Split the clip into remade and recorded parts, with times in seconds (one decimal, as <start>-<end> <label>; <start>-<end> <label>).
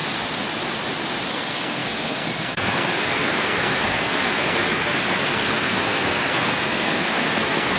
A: 0.0-1.3 recorded; 1.3-7.8 remade